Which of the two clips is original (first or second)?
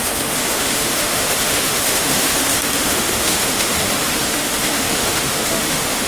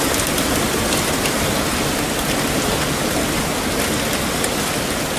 second